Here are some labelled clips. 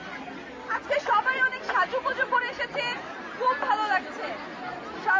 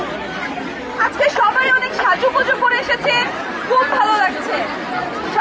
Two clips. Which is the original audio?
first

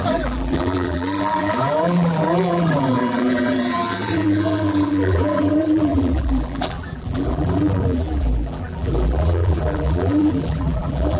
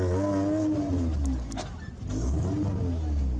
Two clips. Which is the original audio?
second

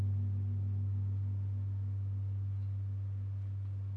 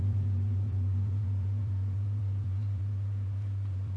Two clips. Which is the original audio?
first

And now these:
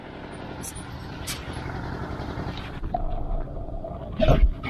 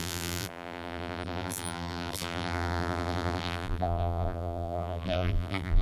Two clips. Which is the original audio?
first